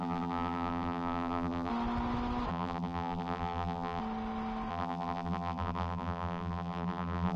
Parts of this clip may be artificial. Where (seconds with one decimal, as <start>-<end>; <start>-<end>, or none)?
0.0-1.7; 2.5-4.0; 4.7-7.4